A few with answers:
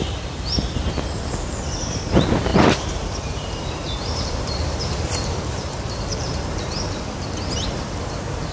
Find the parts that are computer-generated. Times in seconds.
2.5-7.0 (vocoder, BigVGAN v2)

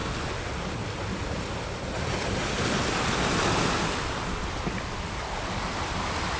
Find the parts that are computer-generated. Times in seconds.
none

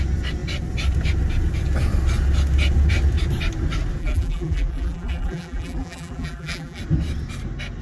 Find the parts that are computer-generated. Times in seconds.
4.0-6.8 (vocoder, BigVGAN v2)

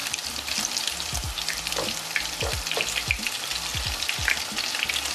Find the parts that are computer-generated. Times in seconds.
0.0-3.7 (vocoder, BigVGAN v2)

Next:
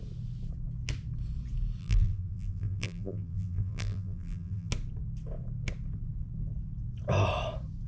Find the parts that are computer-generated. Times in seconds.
1.8-4.7 (vocoder, BigVGAN v2)

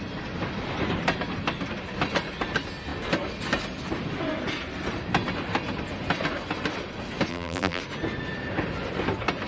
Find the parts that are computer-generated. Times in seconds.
7.3-7.8 (vocoder, BigVGAN v2)

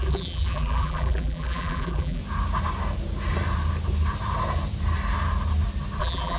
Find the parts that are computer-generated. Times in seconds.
0.0-2.2 (vocoder, BigVGAN v2); 6.0-6.4